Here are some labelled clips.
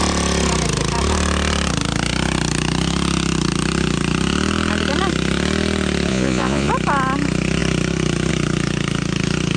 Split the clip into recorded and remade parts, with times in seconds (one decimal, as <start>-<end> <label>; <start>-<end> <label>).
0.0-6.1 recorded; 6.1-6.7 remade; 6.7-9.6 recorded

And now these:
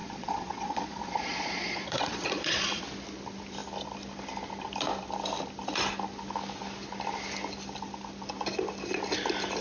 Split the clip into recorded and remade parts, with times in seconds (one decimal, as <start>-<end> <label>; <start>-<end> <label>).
0.0-2.8 remade; 2.8-9.6 recorded

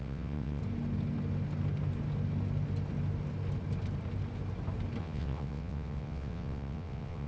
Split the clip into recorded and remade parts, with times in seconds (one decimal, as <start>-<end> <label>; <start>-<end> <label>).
0.0-0.6 remade; 0.6-5.0 recorded; 5.0-7.3 remade

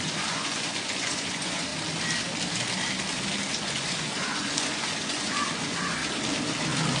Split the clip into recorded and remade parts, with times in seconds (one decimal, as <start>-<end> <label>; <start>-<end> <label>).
0.0-1.7 remade; 1.7-3.5 recorded; 3.5-6.0 remade; 6.0-7.0 recorded

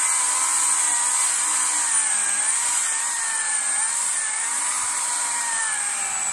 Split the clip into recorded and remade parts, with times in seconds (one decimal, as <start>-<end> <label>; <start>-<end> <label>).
0.0-2.8 recorded; 2.8-3.9 remade; 3.9-4.5 recorded; 4.5-5.6 remade; 5.6-6.3 recorded